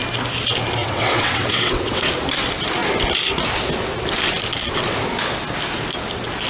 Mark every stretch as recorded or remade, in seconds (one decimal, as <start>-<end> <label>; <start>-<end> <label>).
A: 0.0-0.8 recorded; 0.8-2.1 remade; 2.1-6.5 recorded